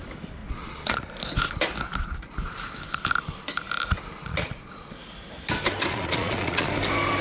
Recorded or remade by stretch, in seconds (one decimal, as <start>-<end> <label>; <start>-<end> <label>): 0.0-0.4 recorded; 0.4-1.0 remade; 1.0-4.2 recorded; 4.2-5.0 remade; 5.0-5.9 recorded; 5.9-6.7 remade; 6.7-7.2 recorded